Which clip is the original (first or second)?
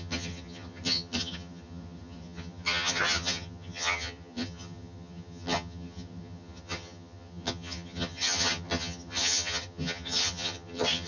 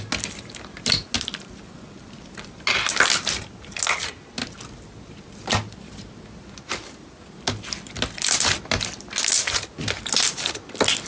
second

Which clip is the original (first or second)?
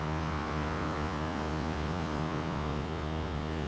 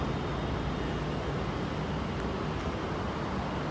second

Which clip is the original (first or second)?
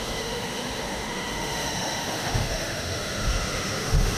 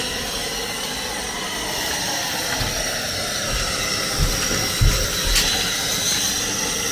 second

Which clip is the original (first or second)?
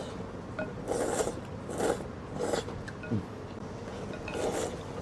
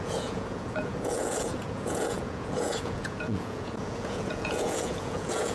first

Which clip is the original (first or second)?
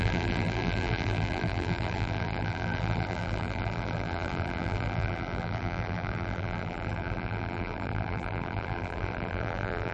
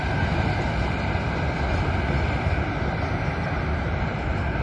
second